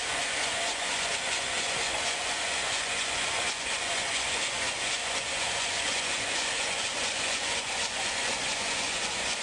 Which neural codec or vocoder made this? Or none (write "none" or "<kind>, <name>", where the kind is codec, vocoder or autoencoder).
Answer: vocoder, Vocos